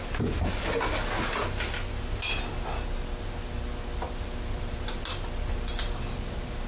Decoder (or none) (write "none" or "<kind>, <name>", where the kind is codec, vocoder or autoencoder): none